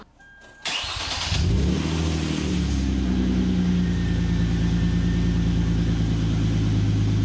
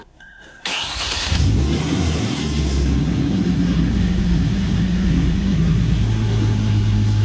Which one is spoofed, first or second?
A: second